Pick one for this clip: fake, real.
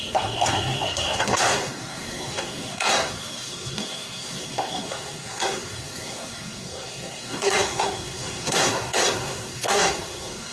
fake